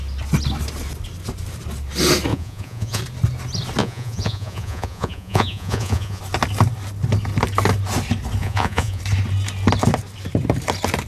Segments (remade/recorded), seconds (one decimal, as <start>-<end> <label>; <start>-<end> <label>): 0.0-2.3 recorded; 2.3-3.0 remade; 3.0-3.8 recorded; 3.8-6.2 remade; 6.2-8.4 recorded; 8.4-9.0 remade; 9.0-11.1 recorded